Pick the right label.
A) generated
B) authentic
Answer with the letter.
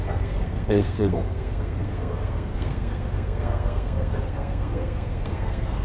A